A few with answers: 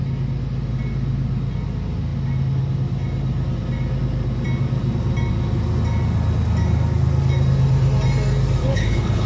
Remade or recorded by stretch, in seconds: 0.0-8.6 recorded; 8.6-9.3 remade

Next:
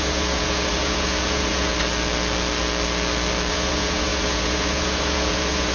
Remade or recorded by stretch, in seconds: 0.0-1.7 remade; 1.7-3.5 recorded; 3.5-5.7 remade

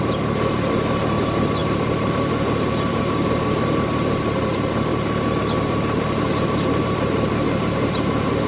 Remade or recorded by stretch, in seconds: 0.0-4.9 remade; 4.9-5.4 recorded; 5.4-8.5 remade

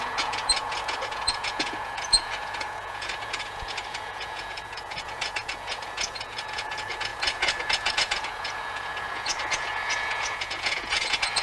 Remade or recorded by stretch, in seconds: 0.0-11.4 remade